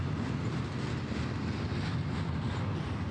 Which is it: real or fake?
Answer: real